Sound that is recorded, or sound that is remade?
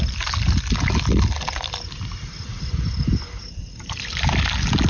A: recorded